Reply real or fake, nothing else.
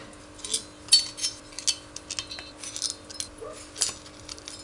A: real